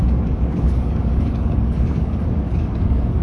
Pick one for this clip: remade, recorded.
remade